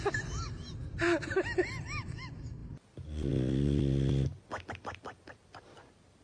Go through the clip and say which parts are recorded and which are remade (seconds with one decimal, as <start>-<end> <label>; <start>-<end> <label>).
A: 0.0-6.2 recorded